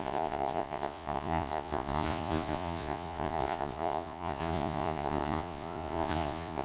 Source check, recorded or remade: remade